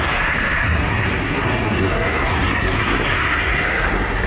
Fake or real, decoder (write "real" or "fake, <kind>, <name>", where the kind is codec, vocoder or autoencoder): fake, codec, SNAC